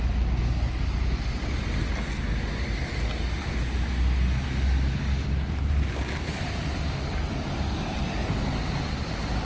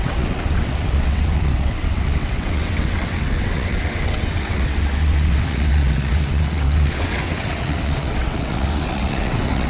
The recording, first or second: first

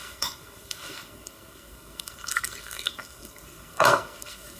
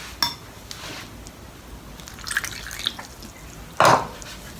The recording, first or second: second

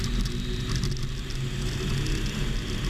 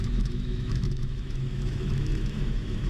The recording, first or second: first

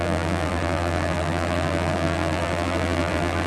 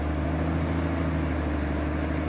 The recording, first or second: second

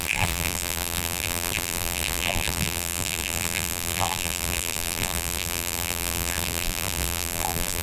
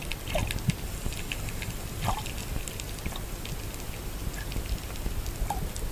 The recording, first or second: second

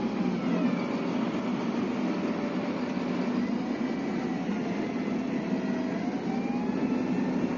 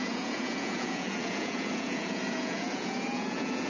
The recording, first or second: first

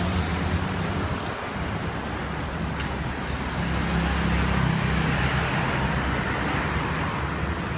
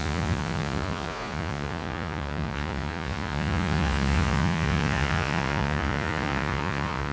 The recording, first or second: first